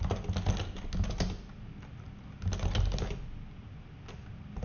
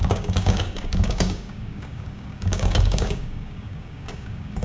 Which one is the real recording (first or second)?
first